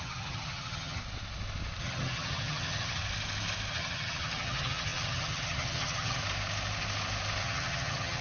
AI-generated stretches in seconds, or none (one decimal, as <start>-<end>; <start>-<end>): 0.0-1.0; 1.8-3.0; 3.7-6.2; 7.4-8.2